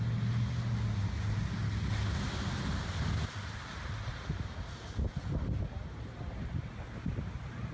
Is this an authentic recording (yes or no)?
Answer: yes